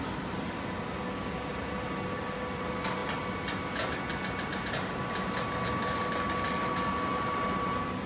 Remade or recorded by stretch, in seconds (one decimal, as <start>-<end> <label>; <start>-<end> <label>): 0.0-8.1 recorded